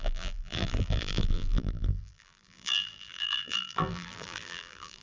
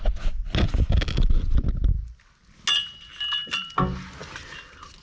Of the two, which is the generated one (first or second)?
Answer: first